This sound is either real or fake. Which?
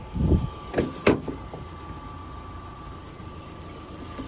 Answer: real